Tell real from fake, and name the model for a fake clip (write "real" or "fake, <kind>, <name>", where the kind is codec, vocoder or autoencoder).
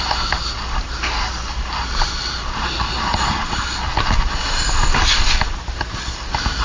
real